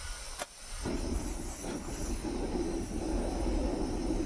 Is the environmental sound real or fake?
real